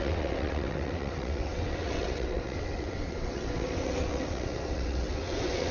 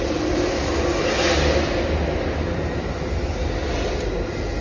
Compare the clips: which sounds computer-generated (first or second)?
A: first